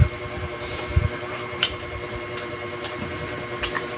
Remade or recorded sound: remade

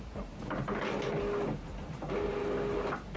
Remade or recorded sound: recorded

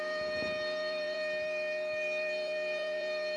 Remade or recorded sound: remade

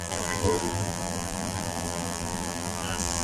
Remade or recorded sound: remade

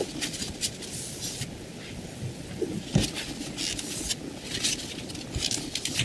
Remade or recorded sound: recorded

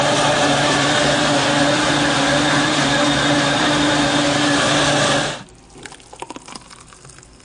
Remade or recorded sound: recorded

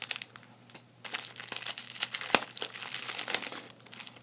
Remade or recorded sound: recorded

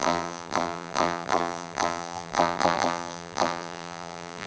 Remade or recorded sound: remade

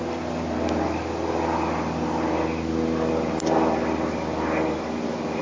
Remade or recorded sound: recorded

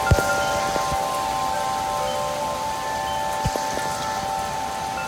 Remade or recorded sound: recorded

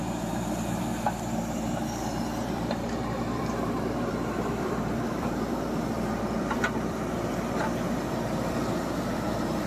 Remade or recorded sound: remade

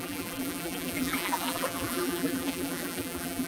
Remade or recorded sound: remade